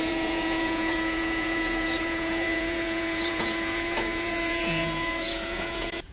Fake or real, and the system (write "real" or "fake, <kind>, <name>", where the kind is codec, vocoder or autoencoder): fake, vocoder, Vocos